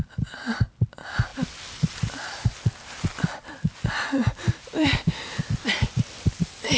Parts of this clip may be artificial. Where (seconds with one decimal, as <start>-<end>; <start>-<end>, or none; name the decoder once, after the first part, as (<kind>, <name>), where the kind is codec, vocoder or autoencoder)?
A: none